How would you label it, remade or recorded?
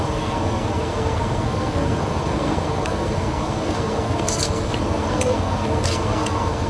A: remade